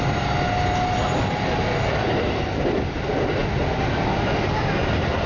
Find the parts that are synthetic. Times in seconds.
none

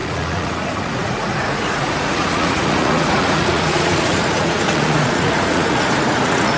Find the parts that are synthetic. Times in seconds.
0.0-6.6 (vocoder, Vocos)

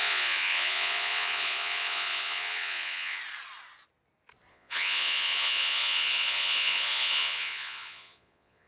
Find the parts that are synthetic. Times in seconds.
0.0-3.2 (vocoder, Vocos); 4.5-8.7

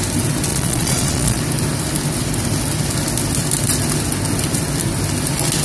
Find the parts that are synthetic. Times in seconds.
0.5-1.4 (vocoder, Vocos)

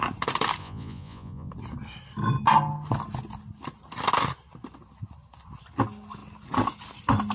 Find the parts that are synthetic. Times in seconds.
0.6-1.5 (vocoder, Vocos)

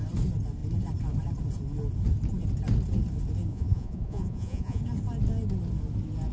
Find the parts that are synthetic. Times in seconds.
3.5-4.8 (vocoder, Vocos)